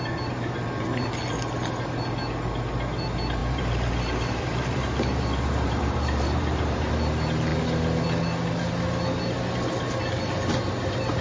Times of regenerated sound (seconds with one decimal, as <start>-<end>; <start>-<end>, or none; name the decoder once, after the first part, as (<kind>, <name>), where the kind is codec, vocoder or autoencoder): 3.4-6.9 (vocoder, BigVGAN v2)